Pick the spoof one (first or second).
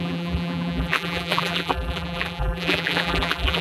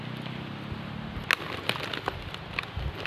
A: first